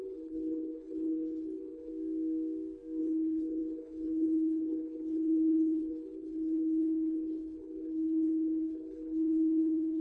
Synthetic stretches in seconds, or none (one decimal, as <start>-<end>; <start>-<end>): 0.0-1.9; 3.0-10.0